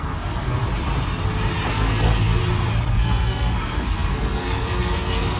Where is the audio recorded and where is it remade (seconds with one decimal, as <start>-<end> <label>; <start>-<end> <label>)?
0.0-0.6 remade; 0.6-1.7 recorded; 1.7-2.4 remade; 2.4-2.9 recorded; 2.9-5.4 remade